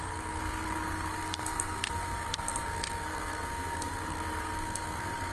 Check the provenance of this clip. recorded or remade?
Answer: remade